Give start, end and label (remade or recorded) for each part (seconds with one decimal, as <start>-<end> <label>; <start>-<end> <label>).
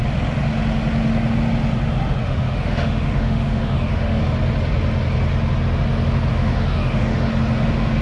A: 0.0-2.2 recorded; 2.2-4.2 remade; 4.2-6.3 recorded; 6.3-7.3 remade; 7.3-8.0 recorded